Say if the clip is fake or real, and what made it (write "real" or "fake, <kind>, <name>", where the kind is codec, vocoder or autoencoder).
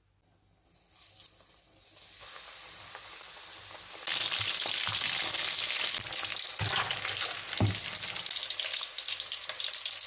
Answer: real